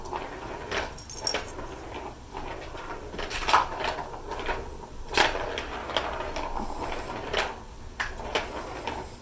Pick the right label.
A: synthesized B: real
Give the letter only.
B